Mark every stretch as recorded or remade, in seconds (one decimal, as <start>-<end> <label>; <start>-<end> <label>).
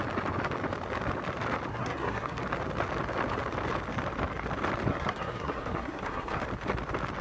0.0-1.7 recorded; 1.7-2.4 remade; 2.4-4.9 recorded; 4.9-6.4 remade; 6.4-7.2 recorded